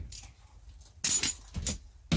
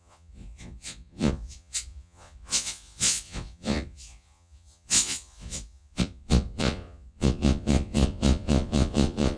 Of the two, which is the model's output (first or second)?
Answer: second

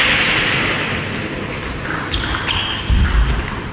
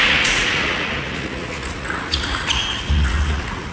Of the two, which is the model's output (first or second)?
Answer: second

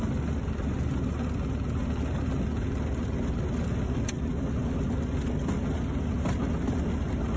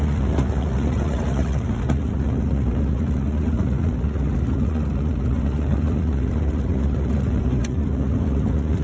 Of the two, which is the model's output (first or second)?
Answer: second